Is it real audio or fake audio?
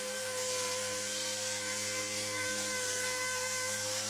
fake